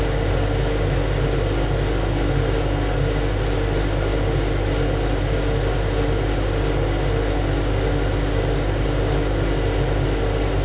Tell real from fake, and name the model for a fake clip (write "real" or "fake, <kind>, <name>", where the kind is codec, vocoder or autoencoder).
real